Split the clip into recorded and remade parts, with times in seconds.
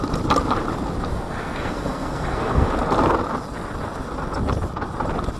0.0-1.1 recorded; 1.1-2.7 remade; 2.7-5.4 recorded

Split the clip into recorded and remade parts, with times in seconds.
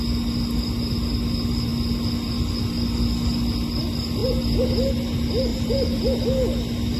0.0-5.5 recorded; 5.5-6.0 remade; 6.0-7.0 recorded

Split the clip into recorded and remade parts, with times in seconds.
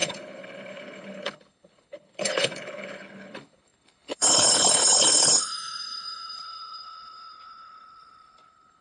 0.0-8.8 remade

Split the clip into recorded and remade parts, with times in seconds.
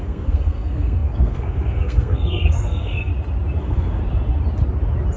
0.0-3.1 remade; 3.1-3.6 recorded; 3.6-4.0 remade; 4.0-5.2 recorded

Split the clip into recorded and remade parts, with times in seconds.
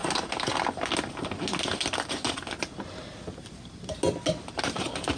0.0-5.2 recorded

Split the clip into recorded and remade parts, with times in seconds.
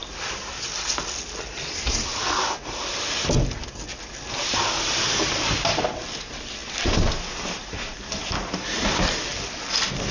0.0-10.1 recorded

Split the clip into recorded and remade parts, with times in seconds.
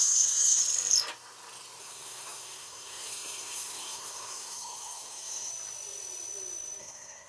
0.0-0.6 remade; 0.6-1.8 recorded; 1.8-5.5 remade; 5.5-6.8 recorded; 6.8-7.3 remade